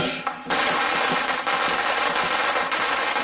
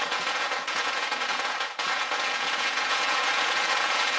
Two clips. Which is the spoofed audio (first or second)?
second